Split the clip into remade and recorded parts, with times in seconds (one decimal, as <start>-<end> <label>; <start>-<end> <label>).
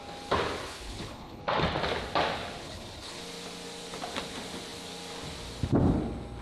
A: 0.0-0.6 recorded; 0.6-1.4 remade; 1.4-2.6 recorded; 2.6-3.2 remade; 3.2-6.4 recorded